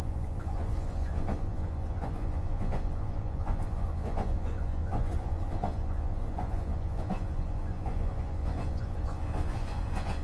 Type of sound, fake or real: fake